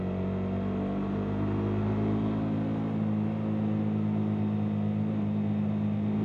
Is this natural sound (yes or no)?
yes